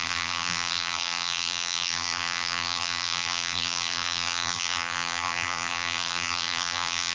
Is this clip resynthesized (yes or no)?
yes